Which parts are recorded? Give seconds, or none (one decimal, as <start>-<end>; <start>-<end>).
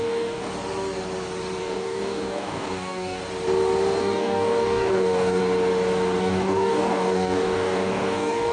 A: 0.5-1.6; 3.2-4.0; 5.4-6.2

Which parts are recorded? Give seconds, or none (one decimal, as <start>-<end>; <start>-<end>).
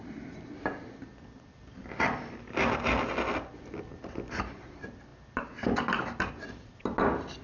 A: 0.0-7.4